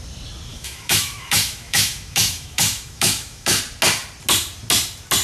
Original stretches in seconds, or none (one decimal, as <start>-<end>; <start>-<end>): 0.0-0.5; 3.6-5.2